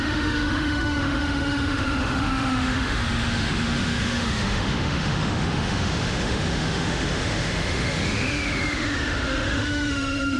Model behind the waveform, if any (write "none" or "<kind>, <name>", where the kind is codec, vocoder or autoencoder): autoencoder, DAC-VAE